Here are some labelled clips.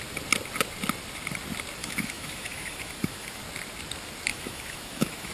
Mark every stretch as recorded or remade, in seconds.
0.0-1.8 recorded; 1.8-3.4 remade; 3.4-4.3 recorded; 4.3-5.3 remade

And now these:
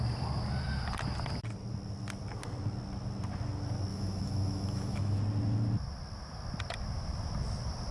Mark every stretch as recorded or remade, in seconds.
0.0-3.9 recorded; 3.9-5.2 remade; 5.2-7.9 recorded

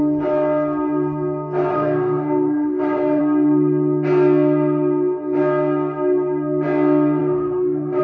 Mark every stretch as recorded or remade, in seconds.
0.0-1.7 recorded; 1.7-3.2 remade; 3.2-7.2 recorded; 7.2-8.0 remade

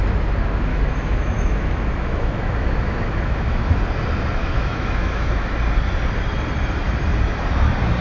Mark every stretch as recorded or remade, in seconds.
0.0-0.7 recorded; 0.7-3.8 remade; 3.8-4.4 recorded; 4.4-5.5 remade; 5.5-8.0 recorded

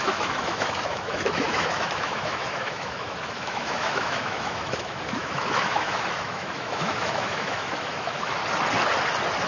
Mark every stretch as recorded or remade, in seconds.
0.0-8.4 remade; 8.4-9.5 recorded

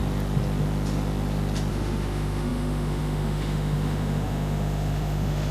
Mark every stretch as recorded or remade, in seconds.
0.0-1.7 recorded; 1.7-5.5 remade

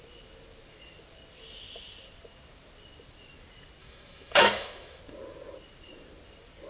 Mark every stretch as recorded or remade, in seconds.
0.0-3.8 recorded; 3.8-5.0 remade; 5.0-6.7 recorded

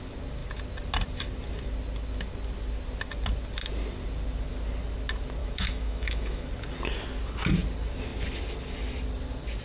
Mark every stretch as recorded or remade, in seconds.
0.0-5.4 recorded; 5.4-6.5 remade; 6.5-9.6 recorded